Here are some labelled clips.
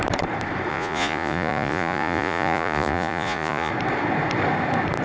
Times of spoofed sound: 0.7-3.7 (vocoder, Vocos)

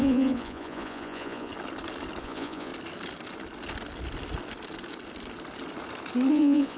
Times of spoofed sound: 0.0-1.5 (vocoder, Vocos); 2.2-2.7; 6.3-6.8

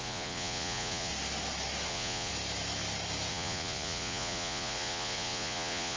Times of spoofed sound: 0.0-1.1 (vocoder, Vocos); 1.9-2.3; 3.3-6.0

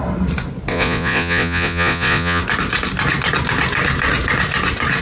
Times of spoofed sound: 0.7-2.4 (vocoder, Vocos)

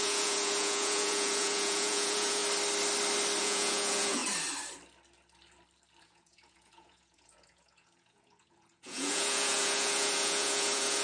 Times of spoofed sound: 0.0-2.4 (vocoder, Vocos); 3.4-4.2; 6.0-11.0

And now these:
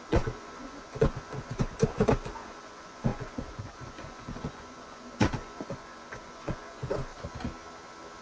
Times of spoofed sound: 0.0-7.1 (vocoder, Vocos)